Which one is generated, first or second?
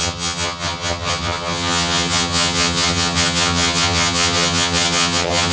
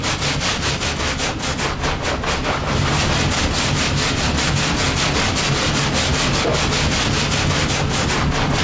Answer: first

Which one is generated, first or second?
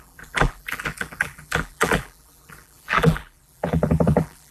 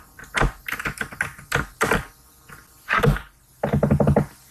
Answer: first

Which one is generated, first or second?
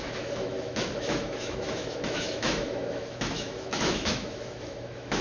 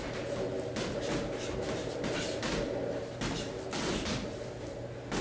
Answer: first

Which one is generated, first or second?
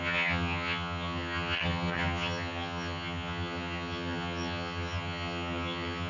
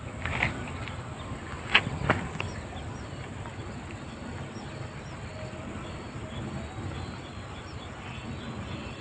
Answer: first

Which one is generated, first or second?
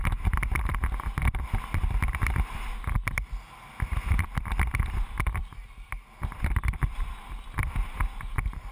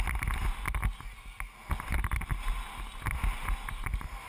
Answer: first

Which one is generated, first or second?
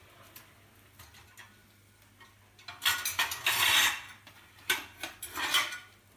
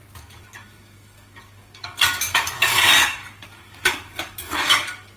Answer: second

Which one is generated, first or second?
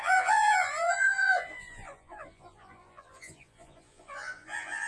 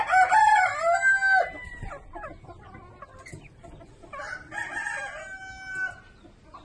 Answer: first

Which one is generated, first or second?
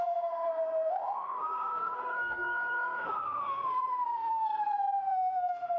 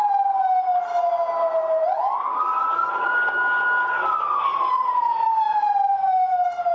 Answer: first